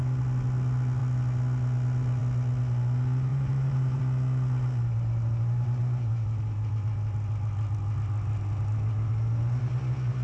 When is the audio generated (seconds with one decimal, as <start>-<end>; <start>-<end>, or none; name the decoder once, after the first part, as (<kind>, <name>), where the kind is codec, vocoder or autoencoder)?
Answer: 3.3-4.0 (vocoder, BigVGAN v2)